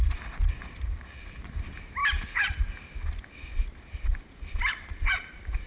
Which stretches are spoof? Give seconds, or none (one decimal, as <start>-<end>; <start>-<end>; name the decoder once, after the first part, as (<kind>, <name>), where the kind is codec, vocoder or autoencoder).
none